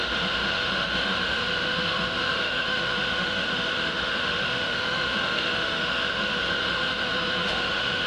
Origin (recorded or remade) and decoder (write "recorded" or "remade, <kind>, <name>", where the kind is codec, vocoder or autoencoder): remade, autoencoder, DAC-VAE